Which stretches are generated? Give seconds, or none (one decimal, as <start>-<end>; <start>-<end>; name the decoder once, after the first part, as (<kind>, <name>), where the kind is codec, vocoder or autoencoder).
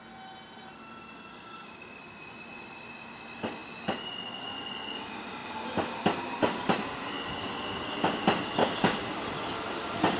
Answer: 1.3-2.0 (codec, DAC); 8.6-9.2